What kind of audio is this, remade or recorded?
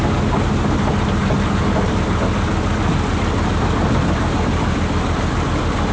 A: recorded